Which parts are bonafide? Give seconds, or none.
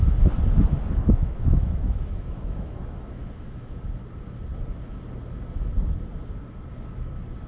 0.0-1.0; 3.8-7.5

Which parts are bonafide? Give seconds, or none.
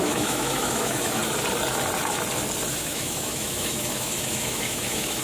1.2-2.7